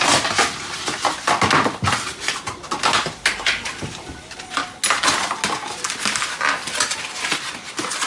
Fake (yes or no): no